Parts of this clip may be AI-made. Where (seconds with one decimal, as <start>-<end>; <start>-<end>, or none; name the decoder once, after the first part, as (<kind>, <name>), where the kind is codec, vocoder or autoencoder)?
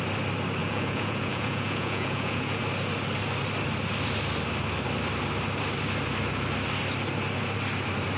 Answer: 0.6-2.6 (vocoder, Vocos)